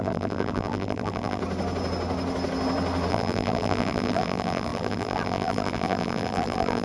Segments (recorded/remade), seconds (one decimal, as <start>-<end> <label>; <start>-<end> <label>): 0.0-1.4 remade; 1.4-3.1 recorded; 3.1-6.8 remade